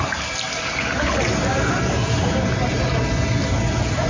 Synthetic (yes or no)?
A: no